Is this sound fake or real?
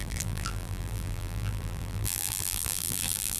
fake